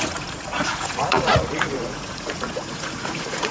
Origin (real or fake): fake